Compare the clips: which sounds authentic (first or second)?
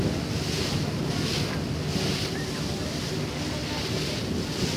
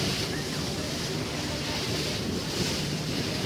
first